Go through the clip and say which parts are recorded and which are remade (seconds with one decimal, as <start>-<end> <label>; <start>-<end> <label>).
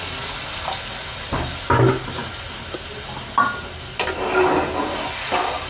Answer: 0.0-5.7 recorded